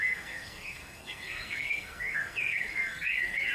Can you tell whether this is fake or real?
fake